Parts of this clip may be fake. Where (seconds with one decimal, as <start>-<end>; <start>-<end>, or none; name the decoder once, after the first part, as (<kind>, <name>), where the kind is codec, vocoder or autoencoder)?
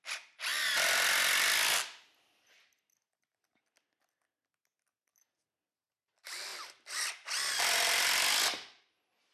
none